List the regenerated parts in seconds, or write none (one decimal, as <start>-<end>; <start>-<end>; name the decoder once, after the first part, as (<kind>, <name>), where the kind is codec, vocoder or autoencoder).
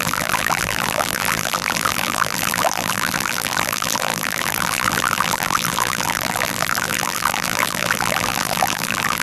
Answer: 0.0-9.2 (vocoder, BigVGAN v2)